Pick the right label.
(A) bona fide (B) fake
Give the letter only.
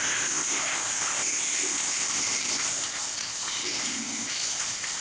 B